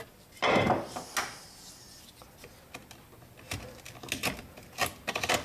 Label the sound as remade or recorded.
recorded